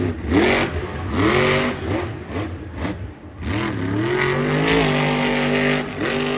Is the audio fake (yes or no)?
no